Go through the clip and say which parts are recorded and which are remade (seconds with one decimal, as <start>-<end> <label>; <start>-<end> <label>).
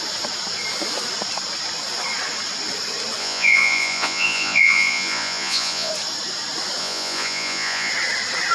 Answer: 0.0-3.2 recorded; 3.2-5.9 remade; 5.9-6.8 recorded; 6.8-7.9 remade; 7.9-8.5 recorded